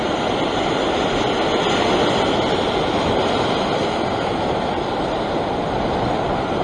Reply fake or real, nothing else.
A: real